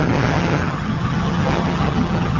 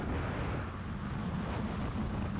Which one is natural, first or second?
second